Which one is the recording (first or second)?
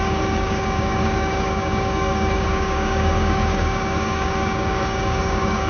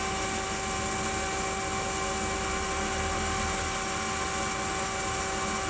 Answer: second